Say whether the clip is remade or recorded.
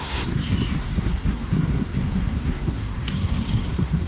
remade